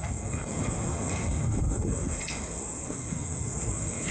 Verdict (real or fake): fake